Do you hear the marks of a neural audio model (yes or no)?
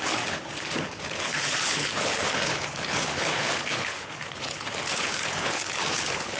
yes